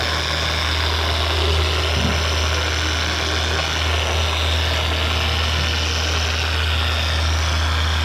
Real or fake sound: real